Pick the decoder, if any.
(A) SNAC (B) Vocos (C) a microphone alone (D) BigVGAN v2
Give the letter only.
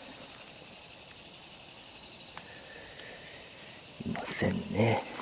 C